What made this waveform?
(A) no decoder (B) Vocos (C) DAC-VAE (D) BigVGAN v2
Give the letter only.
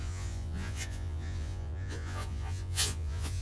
B